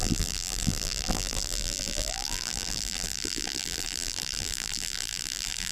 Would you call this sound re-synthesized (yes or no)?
yes